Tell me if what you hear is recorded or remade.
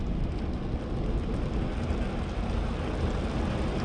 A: recorded